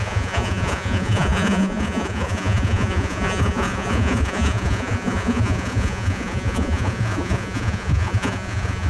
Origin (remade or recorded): remade